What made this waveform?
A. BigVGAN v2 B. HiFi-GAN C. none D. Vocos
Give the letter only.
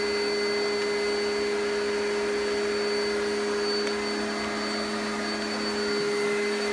C